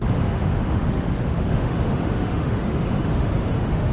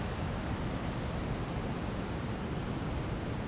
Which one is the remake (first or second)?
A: first